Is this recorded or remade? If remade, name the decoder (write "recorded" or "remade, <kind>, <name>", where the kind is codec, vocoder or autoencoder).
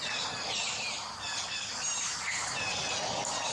recorded